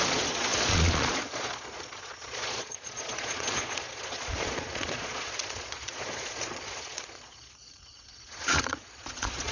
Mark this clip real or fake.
fake